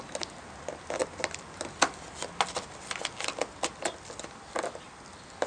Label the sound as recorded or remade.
recorded